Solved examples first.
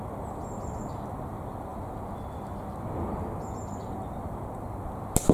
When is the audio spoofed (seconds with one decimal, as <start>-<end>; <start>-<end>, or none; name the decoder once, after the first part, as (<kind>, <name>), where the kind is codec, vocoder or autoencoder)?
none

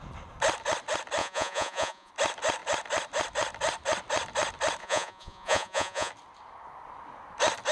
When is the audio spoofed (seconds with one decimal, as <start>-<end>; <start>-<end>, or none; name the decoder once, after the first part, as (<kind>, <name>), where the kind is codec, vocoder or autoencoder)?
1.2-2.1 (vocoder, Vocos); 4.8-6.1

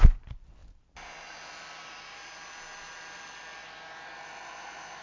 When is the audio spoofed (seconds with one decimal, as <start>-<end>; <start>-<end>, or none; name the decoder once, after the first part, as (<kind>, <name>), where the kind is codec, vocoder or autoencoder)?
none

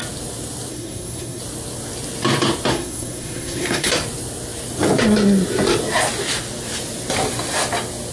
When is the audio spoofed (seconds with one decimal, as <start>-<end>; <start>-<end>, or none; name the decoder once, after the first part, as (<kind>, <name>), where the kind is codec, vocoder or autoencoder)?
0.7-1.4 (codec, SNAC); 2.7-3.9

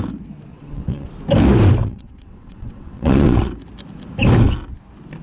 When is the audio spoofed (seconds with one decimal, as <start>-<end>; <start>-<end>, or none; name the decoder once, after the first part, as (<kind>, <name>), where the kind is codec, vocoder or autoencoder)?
0.5-1.1 (vocoder, WaveNeXt); 1.8-3.5

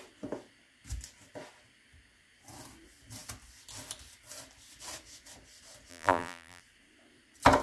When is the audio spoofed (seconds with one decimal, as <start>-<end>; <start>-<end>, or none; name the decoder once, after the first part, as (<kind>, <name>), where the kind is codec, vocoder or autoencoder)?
5.9-6.6 (vocoder, BigVGAN v2)